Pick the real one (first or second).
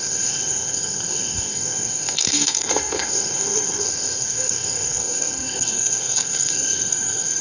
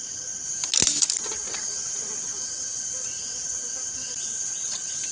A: second